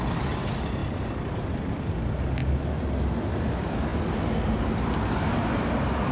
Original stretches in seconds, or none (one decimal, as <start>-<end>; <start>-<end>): 0.0-6.1